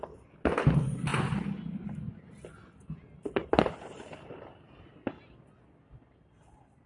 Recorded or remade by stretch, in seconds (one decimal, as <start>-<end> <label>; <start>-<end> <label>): 0.0-6.9 recorded